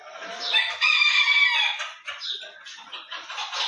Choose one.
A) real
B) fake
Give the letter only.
A